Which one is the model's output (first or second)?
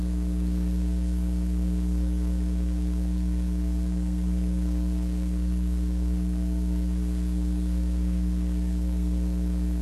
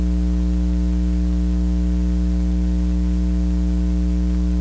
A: first